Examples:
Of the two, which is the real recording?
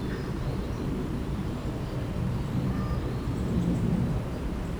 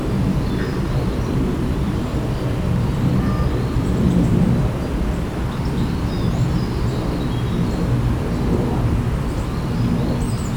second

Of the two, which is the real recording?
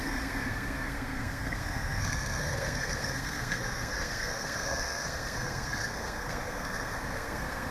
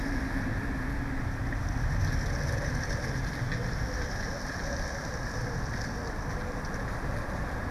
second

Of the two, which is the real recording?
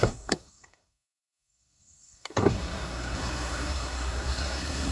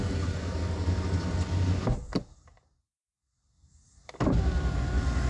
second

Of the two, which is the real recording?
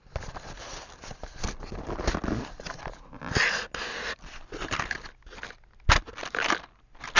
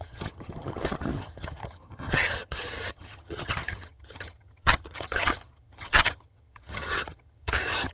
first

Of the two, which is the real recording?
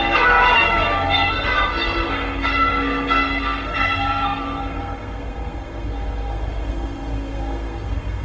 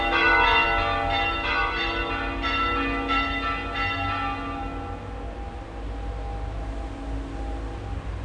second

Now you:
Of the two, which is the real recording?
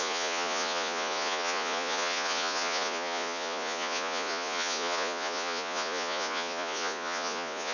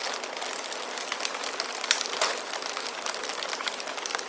second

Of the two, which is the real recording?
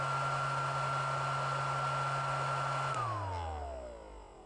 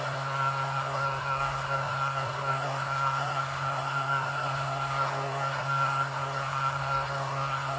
first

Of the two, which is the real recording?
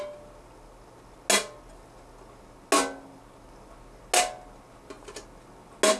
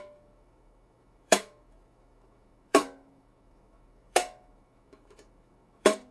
first